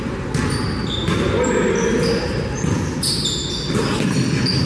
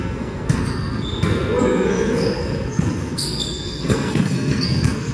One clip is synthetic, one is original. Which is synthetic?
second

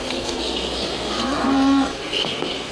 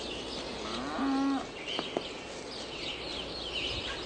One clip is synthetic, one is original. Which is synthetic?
first